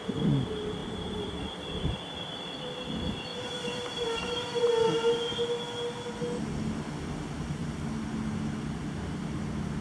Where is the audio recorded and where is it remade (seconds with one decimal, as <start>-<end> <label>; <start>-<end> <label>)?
0.0-0.8 recorded; 0.8-2.0 remade; 2.0-3.3 recorded; 3.3-4.6 remade; 4.6-9.8 recorded